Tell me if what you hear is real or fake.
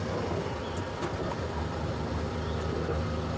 real